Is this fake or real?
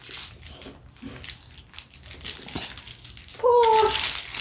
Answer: real